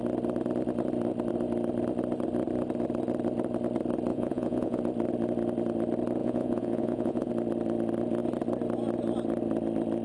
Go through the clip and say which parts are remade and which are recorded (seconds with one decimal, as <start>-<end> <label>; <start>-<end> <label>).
0.0-4.1 recorded; 4.1-4.8 remade; 4.8-6.2 recorded; 6.2-7.3 remade; 7.3-10.0 recorded